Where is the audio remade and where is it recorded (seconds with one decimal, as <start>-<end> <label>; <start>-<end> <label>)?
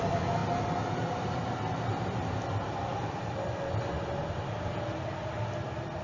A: 0.0-0.4 recorded; 0.4-0.9 remade; 0.9-6.0 recorded